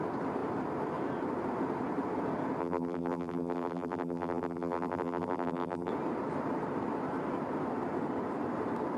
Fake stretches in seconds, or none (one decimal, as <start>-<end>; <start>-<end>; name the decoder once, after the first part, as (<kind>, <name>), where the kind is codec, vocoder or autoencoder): 2.6-5.9 (vocoder, BigVGAN v2)